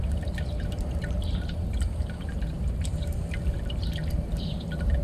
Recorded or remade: remade